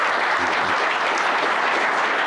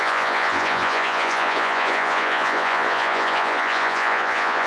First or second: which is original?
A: first